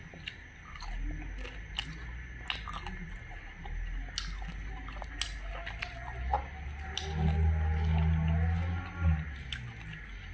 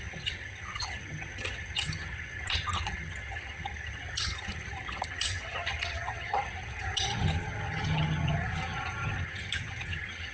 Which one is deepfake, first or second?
second